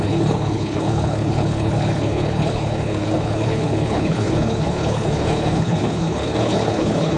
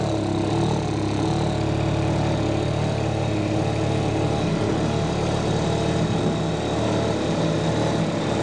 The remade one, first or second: first